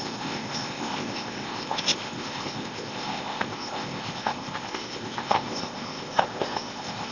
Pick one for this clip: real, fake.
fake